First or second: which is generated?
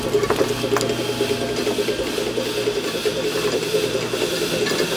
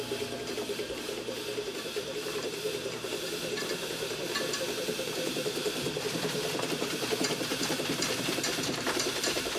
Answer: second